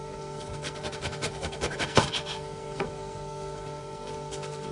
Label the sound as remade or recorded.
remade